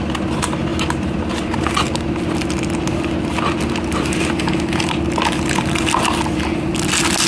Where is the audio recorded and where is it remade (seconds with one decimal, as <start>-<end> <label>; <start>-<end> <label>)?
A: 0.0-7.3 recorded